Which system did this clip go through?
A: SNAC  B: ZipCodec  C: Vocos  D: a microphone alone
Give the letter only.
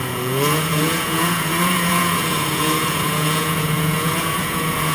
C